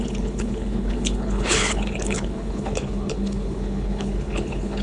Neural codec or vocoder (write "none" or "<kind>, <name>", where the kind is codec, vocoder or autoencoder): codec, HILCodec